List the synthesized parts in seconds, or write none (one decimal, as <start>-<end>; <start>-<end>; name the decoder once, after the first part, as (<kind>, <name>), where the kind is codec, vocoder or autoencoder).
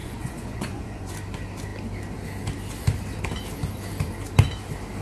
0.0-1.1 (vocoder, Vocos)